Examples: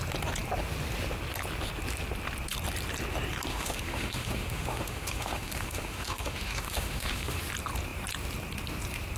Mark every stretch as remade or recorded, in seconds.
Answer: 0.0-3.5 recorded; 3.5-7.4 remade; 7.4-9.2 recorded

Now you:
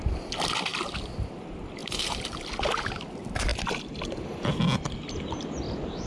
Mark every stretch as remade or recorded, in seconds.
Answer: 0.0-6.1 recorded

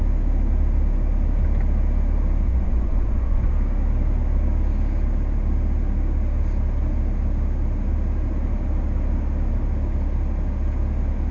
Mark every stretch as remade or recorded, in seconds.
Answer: 0.0-2.5 recorded; 2.5-3.5 remade; 3.5-11.3 recorded

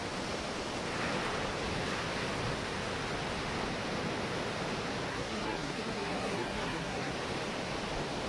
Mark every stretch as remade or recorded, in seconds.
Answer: 0.0-5.1 recorded; 5.1-7.1 remade; 7.1-8.3 recorded

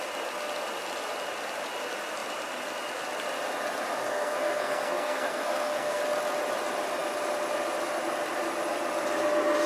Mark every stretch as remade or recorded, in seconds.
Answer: 0.0-4.1 recorded; 4.1-6.0 remade; 6.0-9.7 recorded

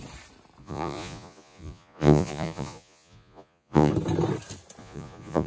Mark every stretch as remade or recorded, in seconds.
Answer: 0.0-0.6 recorded; 0.6-3.9 remade; 3.9-4.8 recorded; 4.8-5.5 remade